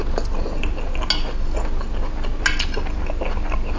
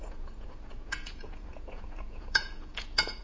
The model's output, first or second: second